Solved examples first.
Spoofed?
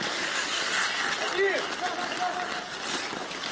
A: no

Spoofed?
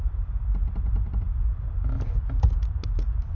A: no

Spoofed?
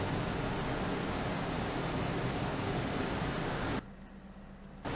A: no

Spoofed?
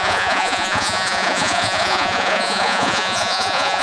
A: yes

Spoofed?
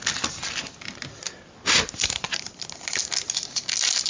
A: no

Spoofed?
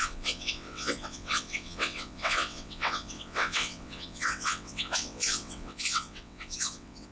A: yes